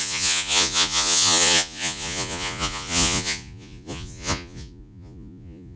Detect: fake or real fake